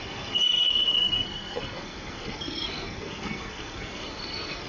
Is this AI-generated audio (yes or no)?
yes